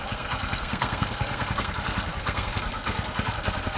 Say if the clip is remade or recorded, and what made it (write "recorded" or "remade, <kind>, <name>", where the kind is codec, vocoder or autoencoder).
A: remade, codec, SNAC